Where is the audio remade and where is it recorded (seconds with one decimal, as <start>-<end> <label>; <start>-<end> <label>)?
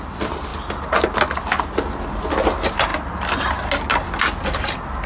0.0-5.1 recorded